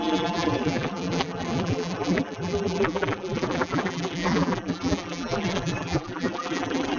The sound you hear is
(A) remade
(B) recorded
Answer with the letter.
A